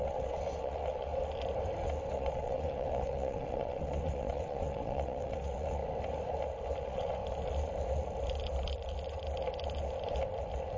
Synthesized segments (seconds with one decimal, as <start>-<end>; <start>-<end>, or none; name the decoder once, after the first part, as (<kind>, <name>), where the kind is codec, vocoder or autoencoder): 0.0-1.1 (vocoder, WaveNeXt); 2.1-5.8; 6.8-7.2